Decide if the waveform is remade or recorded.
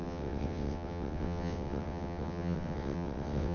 remade